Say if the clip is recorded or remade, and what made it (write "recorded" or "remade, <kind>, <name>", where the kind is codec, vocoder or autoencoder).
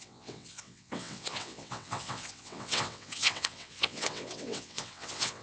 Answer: remade, vocoder, WaveNeXt